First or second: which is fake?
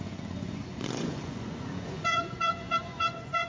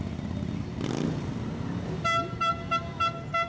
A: first